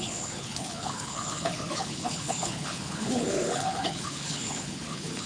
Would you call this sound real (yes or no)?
no